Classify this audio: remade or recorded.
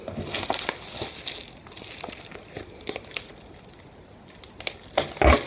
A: recorded